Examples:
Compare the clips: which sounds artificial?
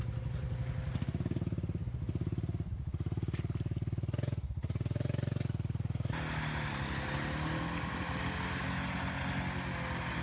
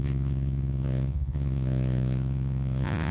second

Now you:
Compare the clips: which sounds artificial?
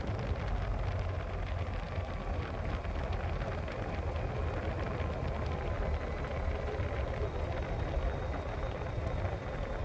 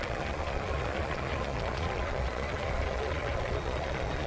second